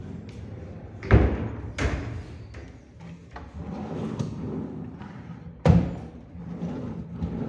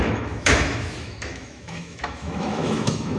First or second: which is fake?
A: second